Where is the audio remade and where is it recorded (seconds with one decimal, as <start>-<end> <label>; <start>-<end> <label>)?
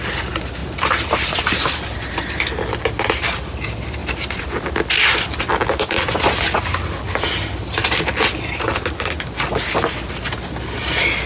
0.0-4.0 recorded; 4.0-6.6 remade; 6.6-11.3 recorded